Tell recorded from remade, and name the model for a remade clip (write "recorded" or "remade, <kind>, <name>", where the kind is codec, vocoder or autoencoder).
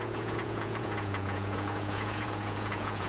remade, vocoder, Vocos